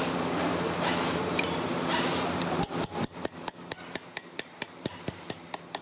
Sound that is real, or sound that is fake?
fake